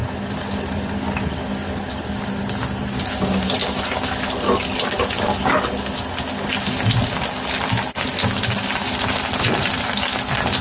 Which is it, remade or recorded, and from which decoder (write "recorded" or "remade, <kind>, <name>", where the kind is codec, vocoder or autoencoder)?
recorded